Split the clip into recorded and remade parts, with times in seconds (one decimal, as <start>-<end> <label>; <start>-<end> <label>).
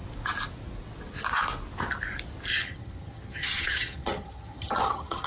0.0-2.5 recorded; 2.5-5.3 remade